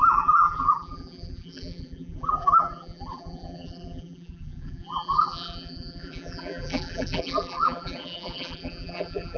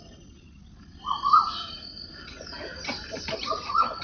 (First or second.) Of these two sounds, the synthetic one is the first